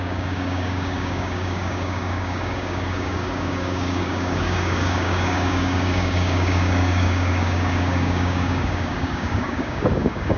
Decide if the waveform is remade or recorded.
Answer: remade